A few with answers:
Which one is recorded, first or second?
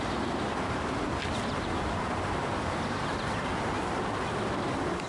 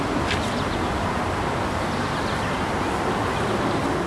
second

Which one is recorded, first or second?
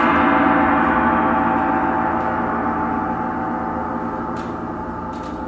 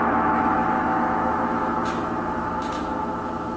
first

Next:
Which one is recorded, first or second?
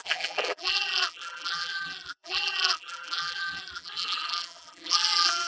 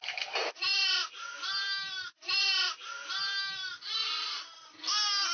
second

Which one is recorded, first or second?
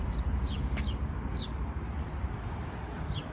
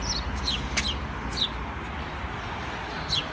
second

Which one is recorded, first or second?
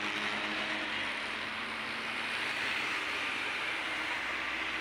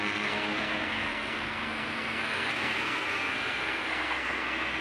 first